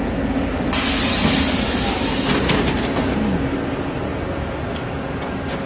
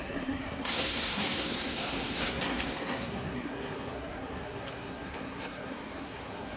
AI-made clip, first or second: second